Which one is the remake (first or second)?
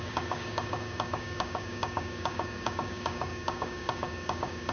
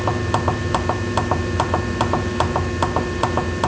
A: first